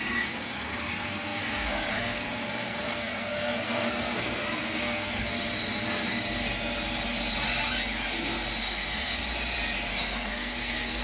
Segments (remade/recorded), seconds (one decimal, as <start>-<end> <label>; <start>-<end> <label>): 0.0-5.3 remade; 5.3-8.6 recorded; 8.6-9.2 remade; 9.2-9.9 recorded; 9.9-11.0 remade